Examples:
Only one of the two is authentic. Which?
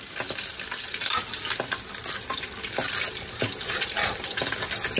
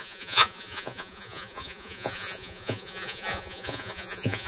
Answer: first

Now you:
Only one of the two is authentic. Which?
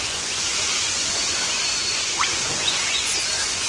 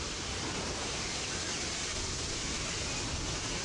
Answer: second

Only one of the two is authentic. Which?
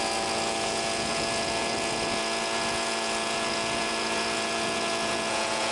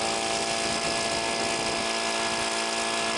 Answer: second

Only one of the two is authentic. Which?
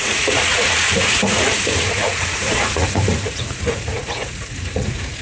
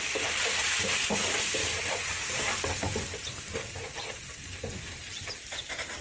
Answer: second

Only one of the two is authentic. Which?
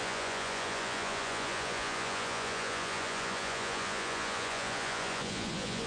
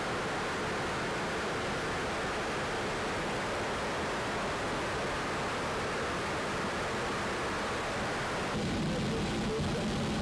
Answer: second